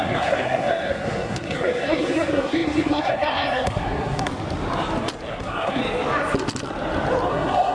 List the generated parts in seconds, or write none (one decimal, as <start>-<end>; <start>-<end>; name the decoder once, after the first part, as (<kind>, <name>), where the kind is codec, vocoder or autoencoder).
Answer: 0.0-4.3 (codec, SNAC); 5.3-5.8; 7.3-7.7

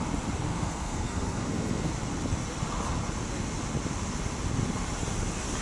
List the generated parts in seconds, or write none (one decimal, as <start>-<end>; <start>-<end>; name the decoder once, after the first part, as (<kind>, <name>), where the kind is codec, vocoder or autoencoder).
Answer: 0.5-1.9 (codec, SNAC)

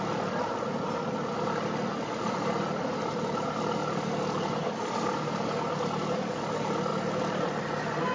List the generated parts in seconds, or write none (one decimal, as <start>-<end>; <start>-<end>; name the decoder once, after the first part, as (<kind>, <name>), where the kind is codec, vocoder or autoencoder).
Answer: none

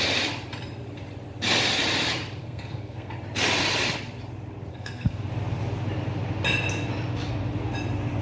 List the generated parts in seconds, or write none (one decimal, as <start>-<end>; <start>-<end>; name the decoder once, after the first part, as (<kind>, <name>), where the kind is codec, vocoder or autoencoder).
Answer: 2.4-3.1 (codec, SNAC); 4.7-5.3